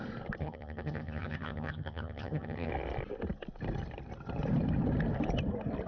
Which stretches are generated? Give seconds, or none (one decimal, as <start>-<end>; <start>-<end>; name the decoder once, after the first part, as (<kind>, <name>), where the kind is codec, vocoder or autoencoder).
0.4-2.7 (vocoder, HiFi-GAN)